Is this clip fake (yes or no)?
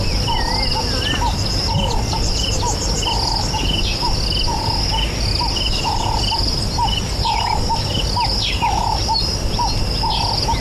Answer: no